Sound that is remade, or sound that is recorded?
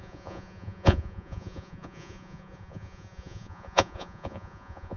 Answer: remade